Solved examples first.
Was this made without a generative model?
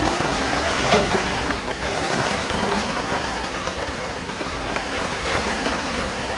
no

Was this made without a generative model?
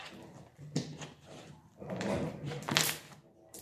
no